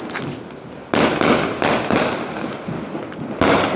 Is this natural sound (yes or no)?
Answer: yes